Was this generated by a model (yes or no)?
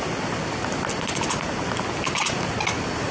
no